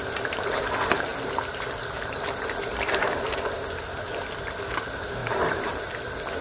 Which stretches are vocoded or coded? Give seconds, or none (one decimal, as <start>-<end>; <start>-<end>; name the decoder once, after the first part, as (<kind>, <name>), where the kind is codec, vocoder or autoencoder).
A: 1.1-3.3 (vocoder, BigVGAN v2); 5.2-5.7